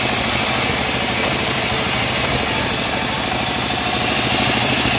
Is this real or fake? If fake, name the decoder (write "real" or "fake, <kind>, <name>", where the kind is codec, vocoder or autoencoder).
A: real